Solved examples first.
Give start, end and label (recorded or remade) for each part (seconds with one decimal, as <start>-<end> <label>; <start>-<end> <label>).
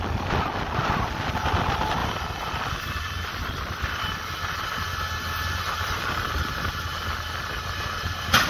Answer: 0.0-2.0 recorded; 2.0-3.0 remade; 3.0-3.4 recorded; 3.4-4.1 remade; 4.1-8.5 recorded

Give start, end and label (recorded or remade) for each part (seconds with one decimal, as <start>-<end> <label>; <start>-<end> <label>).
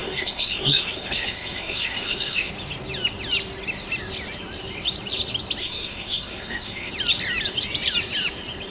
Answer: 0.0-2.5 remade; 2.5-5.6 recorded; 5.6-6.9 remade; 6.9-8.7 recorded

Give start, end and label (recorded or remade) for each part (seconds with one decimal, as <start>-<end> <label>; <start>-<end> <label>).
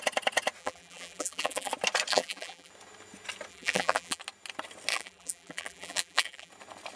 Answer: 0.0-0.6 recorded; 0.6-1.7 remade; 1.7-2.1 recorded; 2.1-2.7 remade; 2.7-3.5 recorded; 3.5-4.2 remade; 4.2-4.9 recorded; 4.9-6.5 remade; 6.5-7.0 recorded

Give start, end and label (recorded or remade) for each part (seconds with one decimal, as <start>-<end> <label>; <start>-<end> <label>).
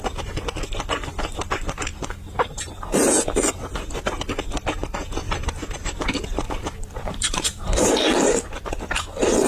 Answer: 0.0-1.9 recorded; 1.9-3.2 remade; 3.2-5.2 recorded; 5.2-7.9 remade; 7.9-9.5 recorded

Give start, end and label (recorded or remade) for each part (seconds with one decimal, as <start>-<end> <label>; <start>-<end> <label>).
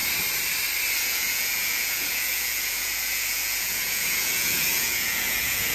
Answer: 0.0-1.0 recorded; 1.0-5.7 remade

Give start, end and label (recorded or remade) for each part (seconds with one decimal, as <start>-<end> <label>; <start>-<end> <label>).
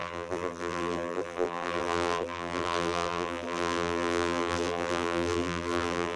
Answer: 0.0-6.2 remade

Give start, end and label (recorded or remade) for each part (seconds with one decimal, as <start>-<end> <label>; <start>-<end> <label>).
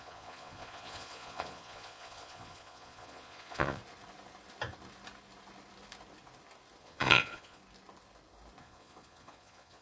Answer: 0.0-3.8 remade; 3.8-6.8 recorded; 6.8-7.6 remade; 7.6-8.6 recorded; 8.6-9.8 remade